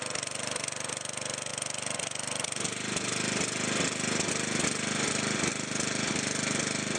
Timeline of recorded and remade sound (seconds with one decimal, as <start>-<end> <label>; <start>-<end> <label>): 0.0-7.0 recorded